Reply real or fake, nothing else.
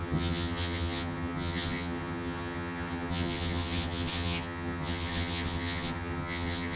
fake